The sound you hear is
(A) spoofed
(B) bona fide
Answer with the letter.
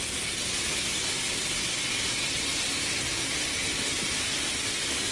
B